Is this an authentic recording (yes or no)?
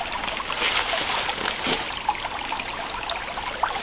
yes